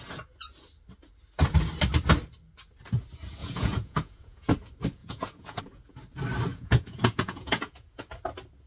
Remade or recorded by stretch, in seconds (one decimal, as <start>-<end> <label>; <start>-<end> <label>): 0.0-3.4 recorded; 3.4-4.5 remade; 4.5-5.0 recorded; 5.0-5.6 remade; 5.6-6.5 recorded; 6.5-8.0 remade; 8.0-8.7 recorded